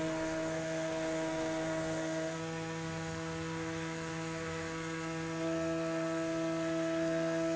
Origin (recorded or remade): remade